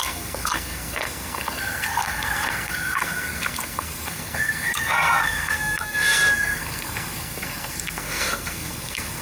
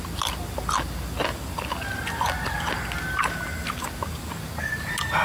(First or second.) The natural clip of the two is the second